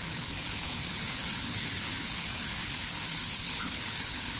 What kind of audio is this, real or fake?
fake